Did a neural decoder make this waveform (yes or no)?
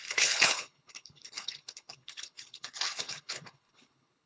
yes